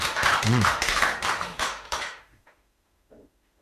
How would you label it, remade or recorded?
remade